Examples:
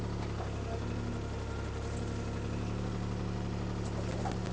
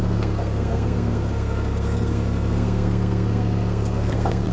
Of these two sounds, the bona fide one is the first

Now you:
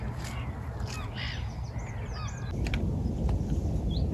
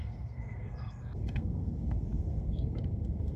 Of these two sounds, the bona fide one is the first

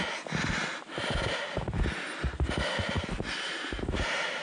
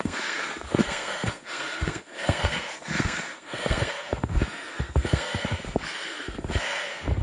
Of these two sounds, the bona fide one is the first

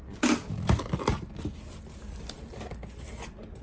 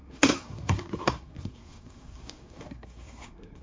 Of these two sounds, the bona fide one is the first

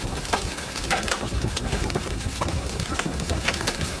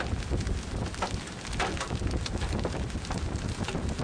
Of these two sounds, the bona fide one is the second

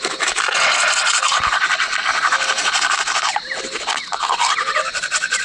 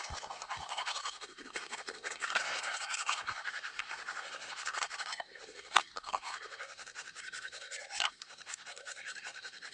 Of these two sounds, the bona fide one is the first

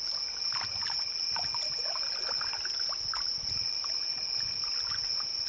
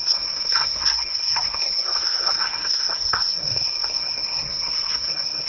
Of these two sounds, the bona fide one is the first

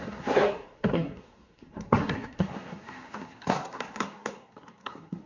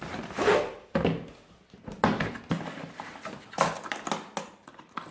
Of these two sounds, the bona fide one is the second